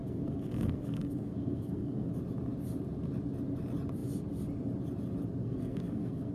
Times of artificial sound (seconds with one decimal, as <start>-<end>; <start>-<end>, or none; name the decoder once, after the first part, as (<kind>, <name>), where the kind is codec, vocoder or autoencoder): 0.0-2.1 (codec, SNAC); 5.4-6.3